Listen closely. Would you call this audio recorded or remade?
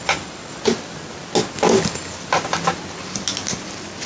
recorded